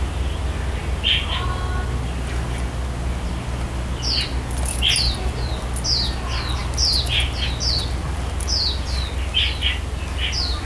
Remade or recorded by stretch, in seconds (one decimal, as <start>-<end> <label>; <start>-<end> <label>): 0.0-10.6 recorded